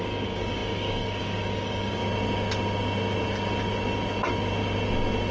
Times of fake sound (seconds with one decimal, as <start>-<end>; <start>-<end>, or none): 0.0-2.0